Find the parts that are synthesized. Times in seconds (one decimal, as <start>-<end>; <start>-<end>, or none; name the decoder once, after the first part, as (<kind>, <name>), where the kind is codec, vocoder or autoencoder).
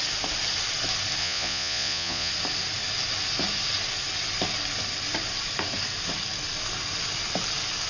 1.2-2.3 (vocoder, Vocos)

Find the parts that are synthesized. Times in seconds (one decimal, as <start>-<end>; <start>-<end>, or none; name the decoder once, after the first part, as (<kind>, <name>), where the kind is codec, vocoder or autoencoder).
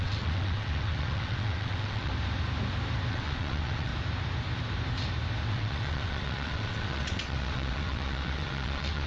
0.0-2.1 (vocoder, WaveNeXt); 3.1-3.9; 5.5-9.1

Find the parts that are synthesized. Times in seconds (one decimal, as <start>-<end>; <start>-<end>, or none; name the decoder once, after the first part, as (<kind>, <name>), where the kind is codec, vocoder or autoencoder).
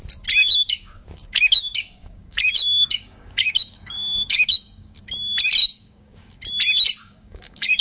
0.4-5.0 (codec, DAC); 5.6-6.4; 7.0-7.8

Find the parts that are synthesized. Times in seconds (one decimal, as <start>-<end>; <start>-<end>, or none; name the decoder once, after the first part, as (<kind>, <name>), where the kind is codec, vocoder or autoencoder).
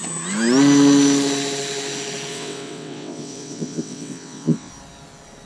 2.3-4.7 (vocoder, WaveNeXt)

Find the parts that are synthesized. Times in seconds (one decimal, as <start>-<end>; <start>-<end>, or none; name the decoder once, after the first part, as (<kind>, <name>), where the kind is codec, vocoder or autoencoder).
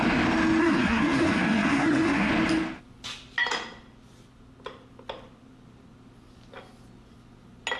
0.6-2.3 (codec, SNAC)